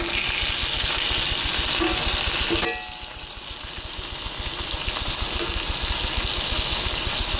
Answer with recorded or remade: recorded